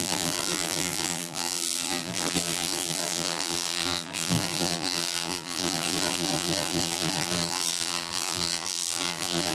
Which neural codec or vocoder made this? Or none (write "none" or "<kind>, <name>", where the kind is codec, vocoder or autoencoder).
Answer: vocoder, BigVGAN v2